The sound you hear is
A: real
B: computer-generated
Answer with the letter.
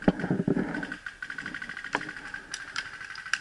A